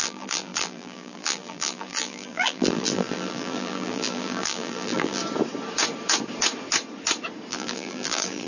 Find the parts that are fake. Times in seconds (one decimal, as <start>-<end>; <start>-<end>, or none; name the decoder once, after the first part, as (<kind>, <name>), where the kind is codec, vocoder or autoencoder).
0.0-5.2 (vocoder, BigVGAN v2); 7.5-8.5